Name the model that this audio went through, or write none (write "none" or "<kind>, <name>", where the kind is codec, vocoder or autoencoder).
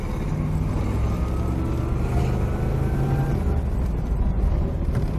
none